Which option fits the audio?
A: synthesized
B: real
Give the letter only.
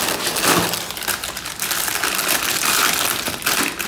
B